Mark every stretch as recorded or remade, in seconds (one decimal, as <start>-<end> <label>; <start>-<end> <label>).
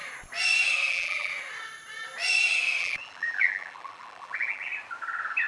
0.0-0.9 recorded; 0.9-1.3 remade; 1.3-2.8 recorded; 2.8-4.7 remade; 4.7-5.5 recorded